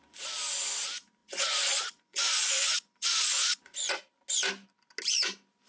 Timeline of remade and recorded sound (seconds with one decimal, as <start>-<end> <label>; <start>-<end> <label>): 0.0-1.2 recorded; 1.2-4.0 remade; 4.0-5.7 recorded